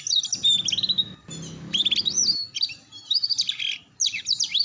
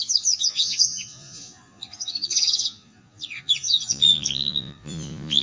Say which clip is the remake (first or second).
second